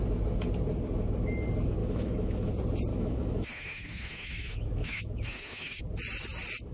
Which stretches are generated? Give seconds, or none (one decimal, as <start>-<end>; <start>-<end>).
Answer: 1.8-2.5; 2.9-5.8